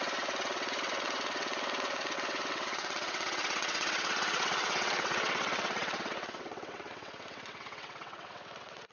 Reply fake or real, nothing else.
fake